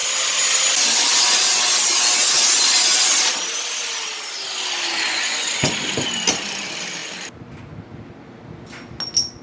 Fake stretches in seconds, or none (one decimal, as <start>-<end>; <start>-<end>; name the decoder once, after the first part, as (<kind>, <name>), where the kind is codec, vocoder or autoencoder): 5.1-5.7 (vocoder, Vocos)

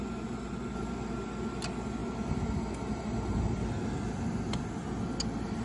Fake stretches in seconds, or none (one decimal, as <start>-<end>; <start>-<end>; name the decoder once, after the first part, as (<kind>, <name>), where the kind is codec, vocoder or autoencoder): none

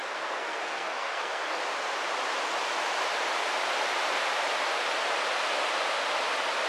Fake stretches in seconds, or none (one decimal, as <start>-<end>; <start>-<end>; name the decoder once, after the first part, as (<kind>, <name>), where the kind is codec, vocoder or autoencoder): 0.0-1.6 (codec, SNAC)

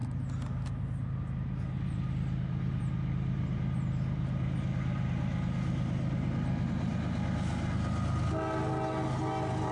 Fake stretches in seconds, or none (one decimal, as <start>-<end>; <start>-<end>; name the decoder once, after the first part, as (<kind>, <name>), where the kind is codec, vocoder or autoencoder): none

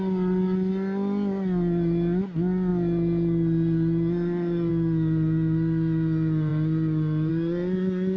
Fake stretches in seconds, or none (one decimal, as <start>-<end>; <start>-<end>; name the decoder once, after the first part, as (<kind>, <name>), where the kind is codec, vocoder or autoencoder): none

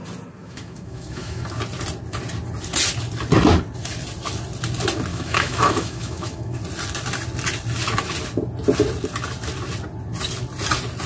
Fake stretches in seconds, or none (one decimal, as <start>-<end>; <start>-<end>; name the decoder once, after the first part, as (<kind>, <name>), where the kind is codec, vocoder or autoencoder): 0.4-1.4 (autoencoder, DAC-VAE); 5.1-6.6